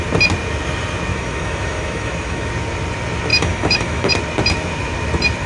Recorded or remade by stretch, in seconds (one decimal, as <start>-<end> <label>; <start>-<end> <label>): 0.0-1.1 recorded; 1.1-2.5 remade; 2.5-3.3 recorded; 3.3-4.1 remade; 4.1-5.5 recorded